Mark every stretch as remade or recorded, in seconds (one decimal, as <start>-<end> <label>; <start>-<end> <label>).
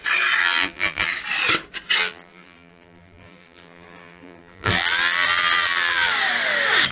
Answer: 0.0-0.4 recorded; 0.4-1.1 remade; 1.1-2.0 recorded; 2.0-6.1 remade; 6.1-6.9 recorded